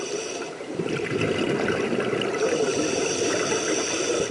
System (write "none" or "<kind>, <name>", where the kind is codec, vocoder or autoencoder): none